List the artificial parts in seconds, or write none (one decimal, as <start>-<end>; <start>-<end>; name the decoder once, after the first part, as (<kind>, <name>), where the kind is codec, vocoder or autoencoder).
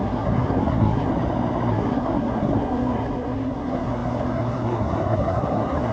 0.0-1.1 (codec, SNAC); 1.7-5.9